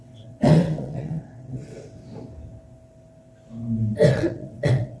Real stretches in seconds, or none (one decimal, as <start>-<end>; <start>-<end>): 2.0-4.1